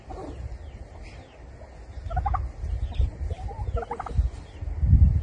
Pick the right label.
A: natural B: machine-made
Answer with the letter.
A